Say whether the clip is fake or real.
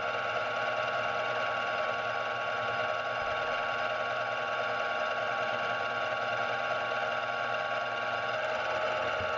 real